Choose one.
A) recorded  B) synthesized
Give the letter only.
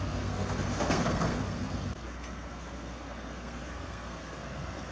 B